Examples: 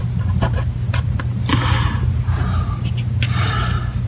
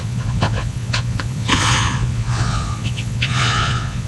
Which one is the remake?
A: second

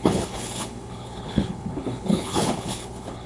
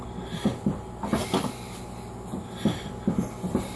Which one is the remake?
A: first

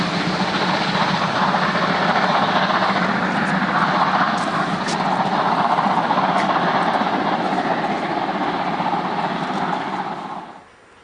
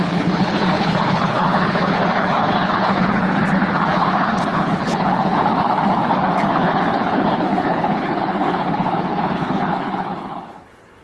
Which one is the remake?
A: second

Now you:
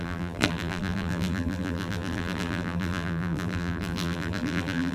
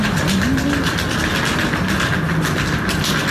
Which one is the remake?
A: first